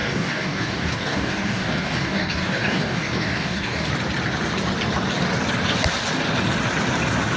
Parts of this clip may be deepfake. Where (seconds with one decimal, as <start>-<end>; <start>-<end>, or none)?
0.0-3.9